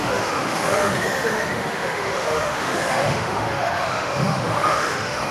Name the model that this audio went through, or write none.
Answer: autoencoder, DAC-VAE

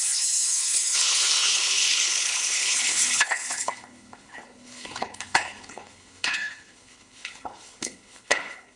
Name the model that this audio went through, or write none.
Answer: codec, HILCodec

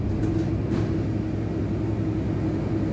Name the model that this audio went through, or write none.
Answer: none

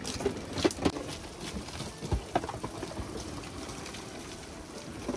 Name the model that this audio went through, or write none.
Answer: none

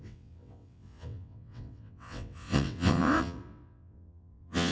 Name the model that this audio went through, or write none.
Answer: vocoder, WaveNeXt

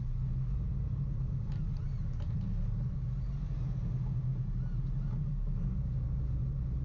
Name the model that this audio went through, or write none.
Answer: none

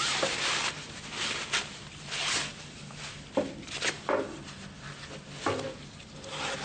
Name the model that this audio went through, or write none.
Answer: none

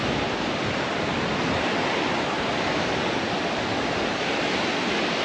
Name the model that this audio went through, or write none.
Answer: none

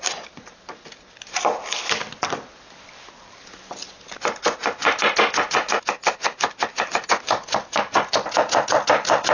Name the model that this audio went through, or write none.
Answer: none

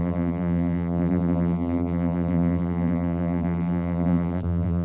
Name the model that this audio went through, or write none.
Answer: vocoder, BigVGAN v2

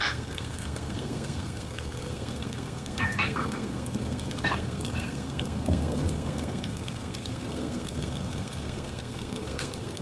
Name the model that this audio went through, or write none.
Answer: codec, SNAC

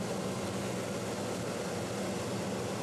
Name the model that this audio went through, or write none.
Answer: none